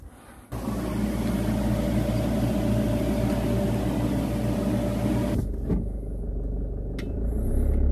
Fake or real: real